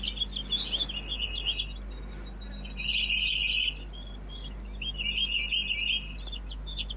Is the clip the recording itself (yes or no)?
yes